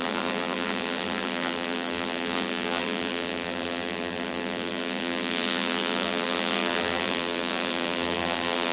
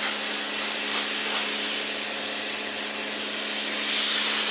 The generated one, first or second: first